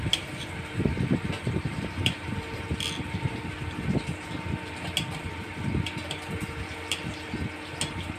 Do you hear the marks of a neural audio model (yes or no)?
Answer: no